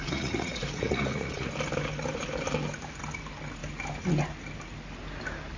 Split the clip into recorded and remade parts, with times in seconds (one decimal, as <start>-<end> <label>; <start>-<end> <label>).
0.0-1.5 remade; 1.5-5.6 recorded